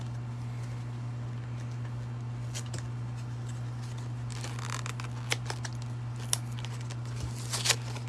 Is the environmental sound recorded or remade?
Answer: recorded